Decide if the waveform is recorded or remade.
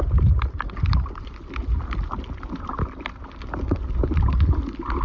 recorded